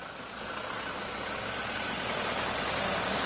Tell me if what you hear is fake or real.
real